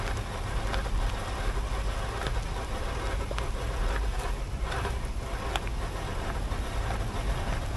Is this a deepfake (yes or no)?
no